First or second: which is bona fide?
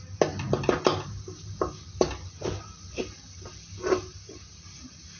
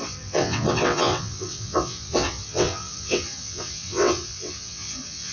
first